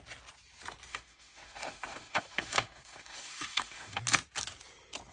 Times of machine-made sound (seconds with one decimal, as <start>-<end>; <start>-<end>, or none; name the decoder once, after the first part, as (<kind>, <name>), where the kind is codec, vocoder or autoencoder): 0.9-4.0 (autoencoder, DAC-VAE)

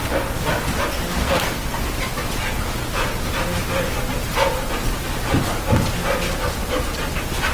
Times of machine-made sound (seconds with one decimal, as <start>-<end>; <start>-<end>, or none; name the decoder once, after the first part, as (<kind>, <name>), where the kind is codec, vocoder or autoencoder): 1.2-1.8 (codec, SNAC)

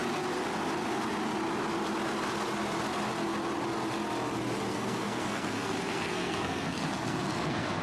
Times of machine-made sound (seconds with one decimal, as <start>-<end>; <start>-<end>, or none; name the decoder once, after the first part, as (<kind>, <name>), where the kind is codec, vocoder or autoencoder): 4.7-7.8 (codec, SNAC)

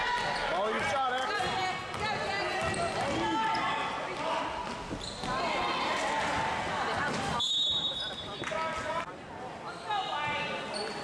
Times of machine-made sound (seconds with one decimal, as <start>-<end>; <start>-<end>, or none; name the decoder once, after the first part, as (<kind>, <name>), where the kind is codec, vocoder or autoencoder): none

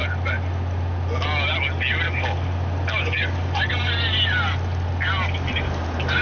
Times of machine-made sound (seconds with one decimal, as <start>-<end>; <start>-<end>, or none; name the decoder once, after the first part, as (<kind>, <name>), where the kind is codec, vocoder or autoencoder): none

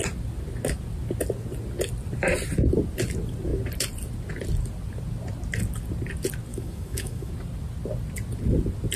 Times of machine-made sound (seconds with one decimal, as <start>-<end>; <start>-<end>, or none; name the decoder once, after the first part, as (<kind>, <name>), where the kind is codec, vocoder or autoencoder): 6.5-7.3 (autoencoder, DAC-VAE)

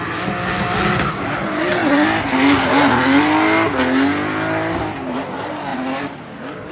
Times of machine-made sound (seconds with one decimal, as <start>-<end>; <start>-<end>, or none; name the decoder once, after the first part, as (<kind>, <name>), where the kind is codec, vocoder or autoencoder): none